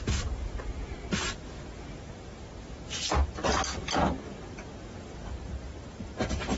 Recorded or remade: recorded